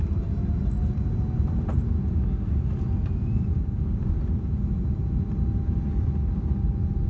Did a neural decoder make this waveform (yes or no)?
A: no